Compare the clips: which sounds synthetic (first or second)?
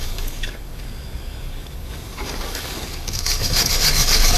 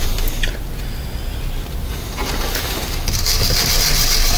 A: first